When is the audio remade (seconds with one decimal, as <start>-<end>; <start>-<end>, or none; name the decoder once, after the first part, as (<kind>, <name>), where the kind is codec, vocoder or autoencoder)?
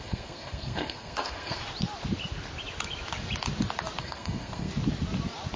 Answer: 0.0-1.6 (codec, SNAC); 4.0-4.7